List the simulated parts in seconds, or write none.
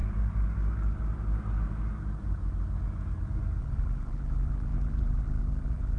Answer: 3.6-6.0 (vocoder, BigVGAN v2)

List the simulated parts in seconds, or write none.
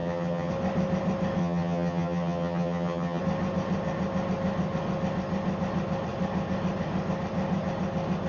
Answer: 0.0-0.5 (vocoder, HiFi-GAN); 1.4-3.2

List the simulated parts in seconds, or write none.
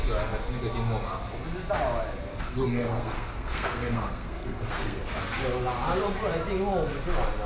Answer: 2.3-5.0 (codec, SNAC)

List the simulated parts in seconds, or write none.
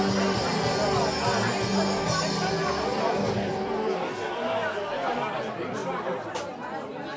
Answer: none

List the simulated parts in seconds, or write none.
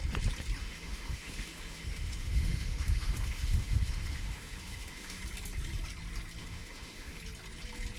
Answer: 0.6-5.2 (autoencoder, DAC-VAE); 6.4-7.2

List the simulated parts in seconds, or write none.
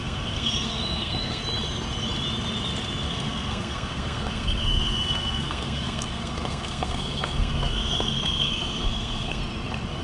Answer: 0.0-1.4 (codec, SNAC); 3.1-9.4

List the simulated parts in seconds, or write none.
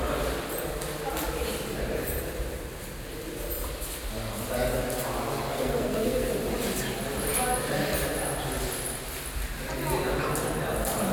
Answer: 5.3-6.3 (codec, SNAC)